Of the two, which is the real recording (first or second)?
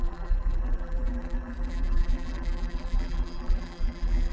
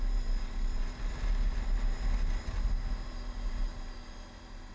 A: second